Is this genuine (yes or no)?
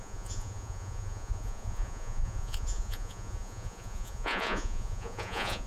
no